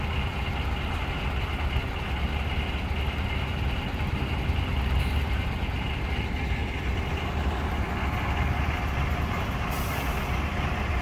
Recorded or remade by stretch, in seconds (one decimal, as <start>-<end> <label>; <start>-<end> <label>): 0.0-11.0 recorded